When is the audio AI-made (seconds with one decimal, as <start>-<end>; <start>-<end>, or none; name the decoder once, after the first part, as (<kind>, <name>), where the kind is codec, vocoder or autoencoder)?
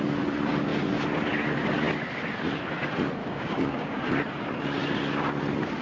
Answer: 3.2-4.0 (codec, DAC)